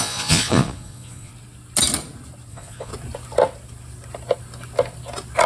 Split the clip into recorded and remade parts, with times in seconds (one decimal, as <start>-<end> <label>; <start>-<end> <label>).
0.0-1.3 remade; 1.3-2.5 recorded; 2.5-2.9 remade; 2.9-5.5 recorded